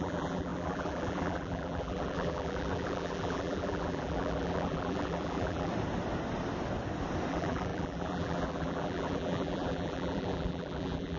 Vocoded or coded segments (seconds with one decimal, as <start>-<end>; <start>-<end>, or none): 0.0-5.7; 7.3-11.2